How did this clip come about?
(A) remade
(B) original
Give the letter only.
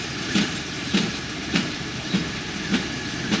A